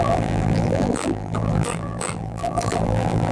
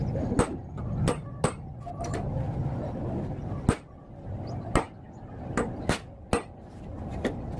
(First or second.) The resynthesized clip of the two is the first